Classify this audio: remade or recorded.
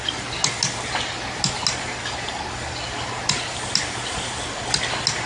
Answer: recorded